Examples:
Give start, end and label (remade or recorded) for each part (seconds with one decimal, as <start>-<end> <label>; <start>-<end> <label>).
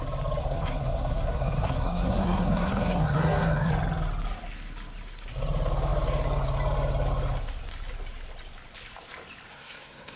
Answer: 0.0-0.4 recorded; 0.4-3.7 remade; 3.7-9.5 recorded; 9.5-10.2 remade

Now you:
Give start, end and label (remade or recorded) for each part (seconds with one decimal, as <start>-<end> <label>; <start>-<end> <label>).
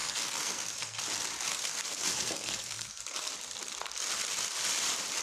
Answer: 0.0-1.0 remade; 1.0-1.5 recorded; 1.5-3.0 remade; 3.0-5.2 recorded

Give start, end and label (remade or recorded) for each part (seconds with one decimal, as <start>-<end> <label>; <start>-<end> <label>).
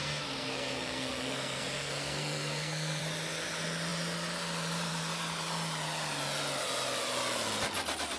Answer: 0.0-3.0 remade; 3.0-8.2 recorded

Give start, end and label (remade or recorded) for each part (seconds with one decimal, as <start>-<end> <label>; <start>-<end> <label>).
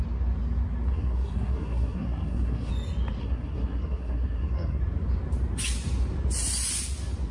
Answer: 0.0-0.9 recorded; 0.9-2.7 remade; 2.7-3.2 recorded; 3.2-4.8 remade; 4.8-7.3 recorded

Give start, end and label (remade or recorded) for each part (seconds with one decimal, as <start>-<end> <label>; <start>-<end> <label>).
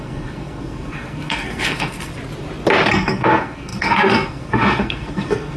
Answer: 0.0-2.1 remade; 2.1-2.9 recorded; 2.9-5.6 remade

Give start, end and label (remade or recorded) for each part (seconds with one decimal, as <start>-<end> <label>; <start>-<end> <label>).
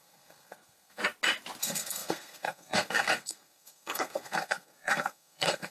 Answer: 0.0-1.0 remade; 1.0-1.6 recorded; 1.6-5.7 remade